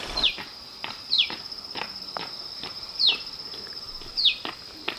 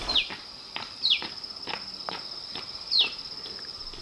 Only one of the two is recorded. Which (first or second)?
first